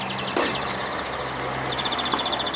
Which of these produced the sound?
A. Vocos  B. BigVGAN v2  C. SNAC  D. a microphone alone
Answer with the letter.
D